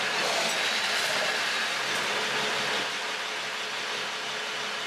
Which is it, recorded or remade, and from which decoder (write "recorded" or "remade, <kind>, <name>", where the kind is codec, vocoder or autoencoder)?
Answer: recorded